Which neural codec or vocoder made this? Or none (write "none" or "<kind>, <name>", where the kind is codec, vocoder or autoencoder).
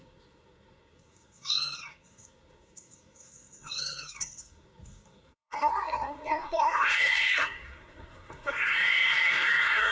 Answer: codec, SNAC